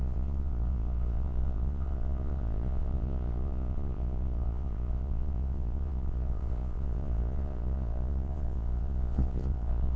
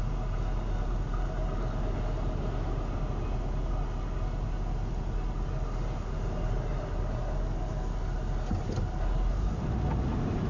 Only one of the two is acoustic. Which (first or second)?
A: second